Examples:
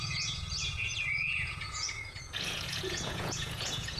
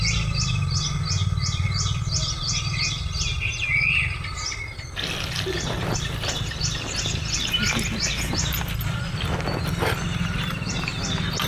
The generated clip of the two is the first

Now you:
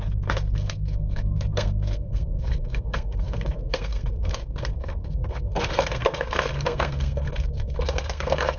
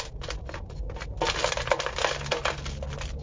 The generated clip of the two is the first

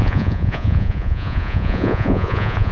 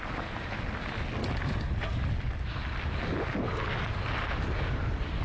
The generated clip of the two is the first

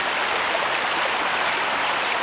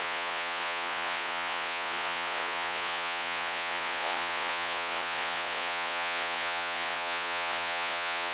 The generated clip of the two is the second